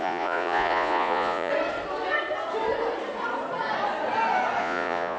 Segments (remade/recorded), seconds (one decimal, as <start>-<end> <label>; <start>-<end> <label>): 0.0-1.5 remade; 1.5-4.6 recorded; 4.6-5.2 remade